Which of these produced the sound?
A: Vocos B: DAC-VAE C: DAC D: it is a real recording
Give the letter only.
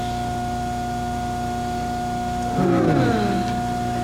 D